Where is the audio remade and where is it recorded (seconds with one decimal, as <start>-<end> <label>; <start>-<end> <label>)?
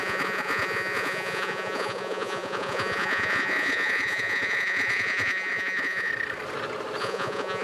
0.0-6.1 remade; 6.1-7.0 recorded; 7.0-7.6 remade